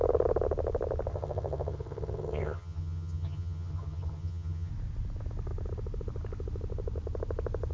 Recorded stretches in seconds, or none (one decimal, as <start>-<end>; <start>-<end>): 0.0-1.1; 4.7-7.7